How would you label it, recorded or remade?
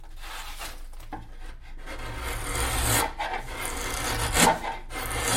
recorded